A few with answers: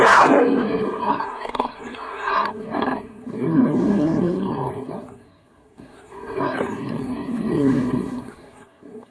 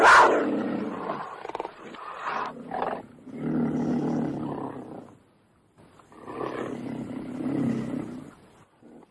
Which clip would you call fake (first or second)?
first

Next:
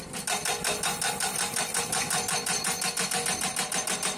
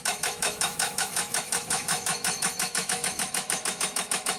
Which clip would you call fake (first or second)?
second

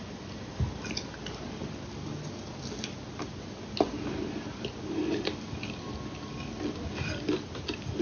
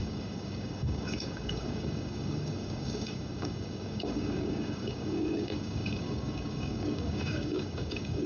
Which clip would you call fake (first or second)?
second